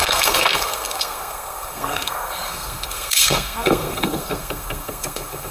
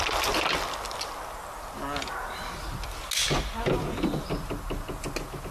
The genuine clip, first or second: second